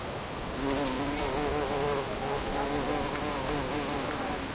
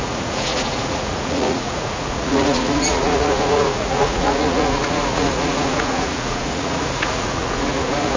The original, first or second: first